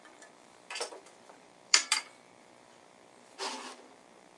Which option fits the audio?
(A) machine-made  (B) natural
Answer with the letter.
A